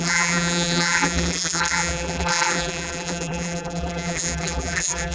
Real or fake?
fake